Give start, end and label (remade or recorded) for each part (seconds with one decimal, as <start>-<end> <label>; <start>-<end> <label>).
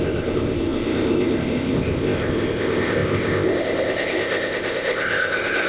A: 0.0-5.7 remade